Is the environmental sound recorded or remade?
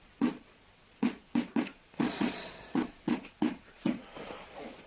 remade